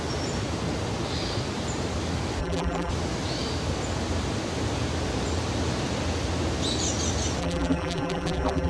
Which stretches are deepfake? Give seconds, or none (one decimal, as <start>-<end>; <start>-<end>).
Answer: 2.4-2.9; 7.4-8.7